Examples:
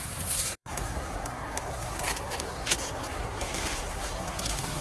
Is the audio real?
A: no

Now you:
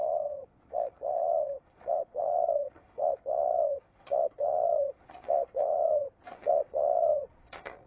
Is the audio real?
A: no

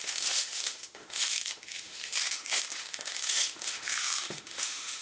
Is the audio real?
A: no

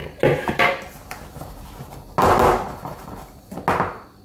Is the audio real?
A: yes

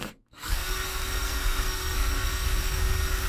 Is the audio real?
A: no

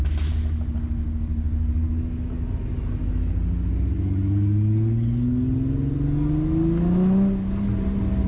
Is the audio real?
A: yes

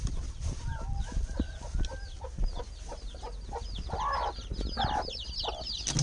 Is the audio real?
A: yes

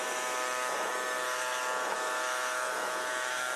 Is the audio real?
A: no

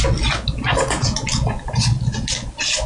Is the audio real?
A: yes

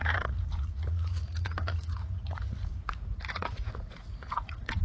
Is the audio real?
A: no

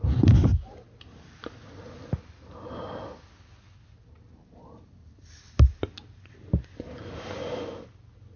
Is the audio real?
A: yes